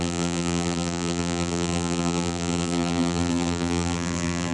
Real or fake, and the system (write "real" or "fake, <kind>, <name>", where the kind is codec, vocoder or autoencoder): fake, vocoder, BigVGAN v2